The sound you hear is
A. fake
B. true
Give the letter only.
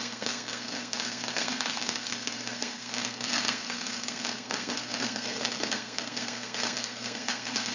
A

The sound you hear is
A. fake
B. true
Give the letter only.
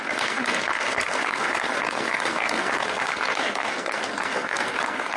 A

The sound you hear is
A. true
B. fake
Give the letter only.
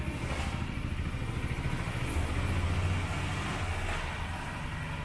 A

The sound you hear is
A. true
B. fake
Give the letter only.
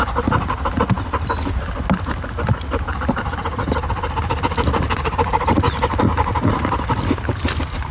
A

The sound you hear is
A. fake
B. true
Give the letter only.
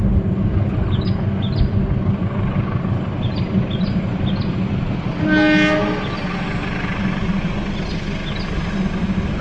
B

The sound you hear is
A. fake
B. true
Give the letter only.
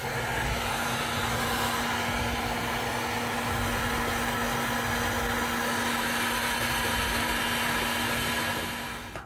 B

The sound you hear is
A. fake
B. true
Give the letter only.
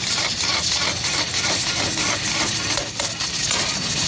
B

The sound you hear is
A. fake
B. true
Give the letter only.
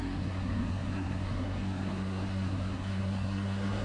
A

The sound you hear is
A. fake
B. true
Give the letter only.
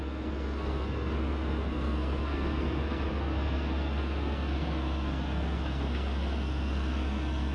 A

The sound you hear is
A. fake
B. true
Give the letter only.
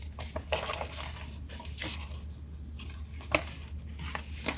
B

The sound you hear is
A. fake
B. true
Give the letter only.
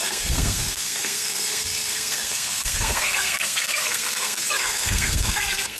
A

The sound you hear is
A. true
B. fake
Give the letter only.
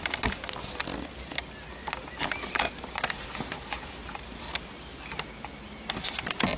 A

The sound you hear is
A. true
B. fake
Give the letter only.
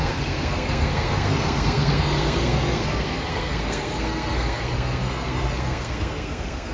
B